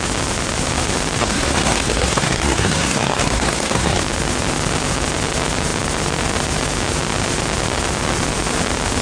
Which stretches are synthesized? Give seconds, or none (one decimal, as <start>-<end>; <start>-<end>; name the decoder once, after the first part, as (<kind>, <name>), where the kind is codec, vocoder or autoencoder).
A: 1.2-4.0 (codec, SNAC)